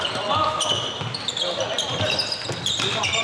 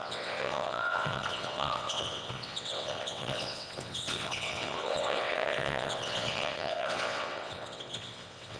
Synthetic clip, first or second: second